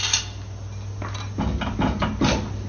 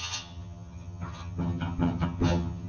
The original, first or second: first